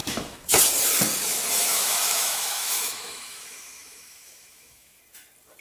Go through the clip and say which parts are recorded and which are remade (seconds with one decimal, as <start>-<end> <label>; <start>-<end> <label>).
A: 0.0-0.6 remade; 0.6-1.6 recorded; 1.6-5.0 remade; 5.0-5.6 recorded